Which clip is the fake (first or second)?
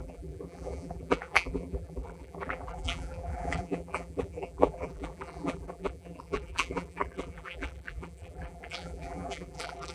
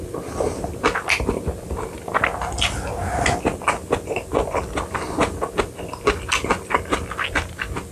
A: first